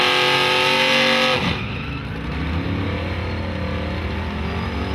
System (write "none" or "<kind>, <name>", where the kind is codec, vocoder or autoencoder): none